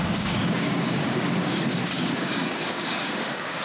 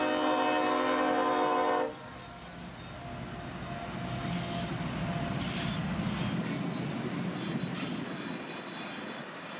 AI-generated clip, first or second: first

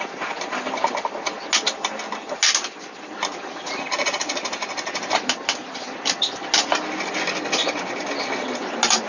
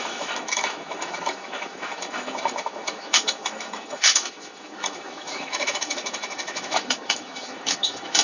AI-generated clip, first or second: second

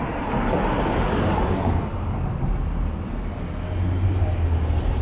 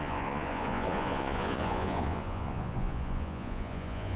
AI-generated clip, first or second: second